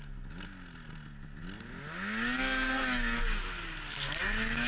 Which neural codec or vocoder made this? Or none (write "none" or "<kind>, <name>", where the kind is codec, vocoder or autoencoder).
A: none